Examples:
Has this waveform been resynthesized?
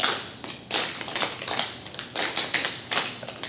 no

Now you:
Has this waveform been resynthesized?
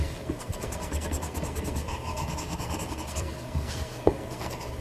yes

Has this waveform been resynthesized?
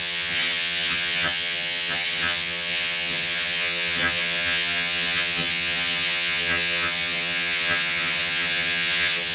yes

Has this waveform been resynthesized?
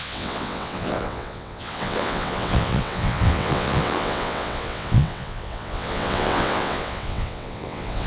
yes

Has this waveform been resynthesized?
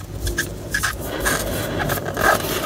no